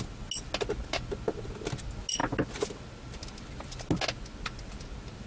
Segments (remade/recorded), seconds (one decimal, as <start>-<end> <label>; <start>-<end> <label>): 0.0-5.3 recorded